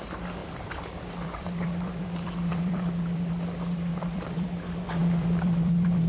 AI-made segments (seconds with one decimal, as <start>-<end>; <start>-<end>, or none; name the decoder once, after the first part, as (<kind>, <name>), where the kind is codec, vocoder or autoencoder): 0.4-3.3 (vocoder, BigVGAN v2); 3.9-4.5; 5.0-6.1